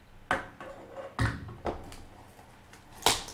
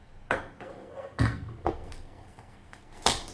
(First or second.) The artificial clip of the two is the second